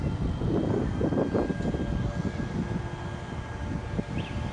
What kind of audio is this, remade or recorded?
recorded